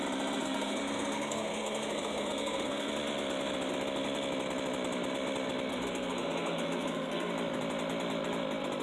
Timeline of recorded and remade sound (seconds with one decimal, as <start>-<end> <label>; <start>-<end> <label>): 0.0-0.4 recorded; 0.4-2.9 remade; 2.9-5.7 recorded; 5.7-7.3 remade; 7.3-8.8 recorded